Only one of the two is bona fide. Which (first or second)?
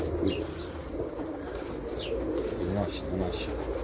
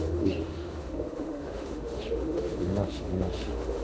first